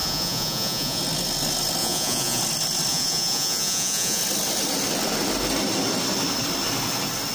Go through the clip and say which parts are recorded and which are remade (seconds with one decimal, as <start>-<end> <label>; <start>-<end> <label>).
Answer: 0.0-1.0 remade; 1.0-1.8 recorded; 1.8-2.4 remade; 2.4-2.9 recorded; 2.9-4.2 remade; 4.2-7.3 recorded